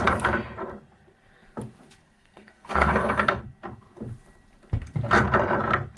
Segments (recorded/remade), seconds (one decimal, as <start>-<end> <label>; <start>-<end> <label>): 0.0-2.0 recorded; 2.0-3.4 remade; 3.4-6.0 recorded

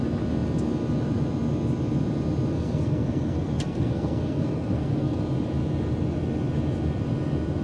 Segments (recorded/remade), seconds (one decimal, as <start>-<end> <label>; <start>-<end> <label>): 0.0-2.5 recorded; 2.5-5.2 remade; 5.2-7.6 recorded

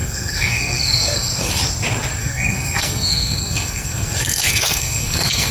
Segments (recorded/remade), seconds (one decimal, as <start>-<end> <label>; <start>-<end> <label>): 0.0-1.5 remade; 1.5-2.2 recorded; 2.2-5.5 remade

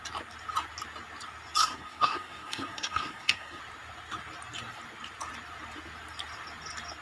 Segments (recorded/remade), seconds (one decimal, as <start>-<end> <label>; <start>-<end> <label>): 0.0-1.6 recorded; 1.6-3.6 remade; 3.6-7.0 recorded

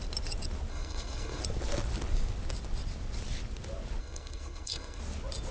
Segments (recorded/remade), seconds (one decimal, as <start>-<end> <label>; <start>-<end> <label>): 0.0-0.7 recorded; 0.7-1.4 remade; 1.4-4.0 recorded; 4.0-5.0 remade; 5.0-5.5 recorded

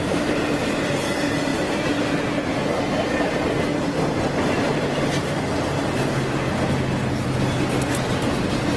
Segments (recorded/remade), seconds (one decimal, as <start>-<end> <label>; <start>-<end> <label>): 0.0-8.8 recorded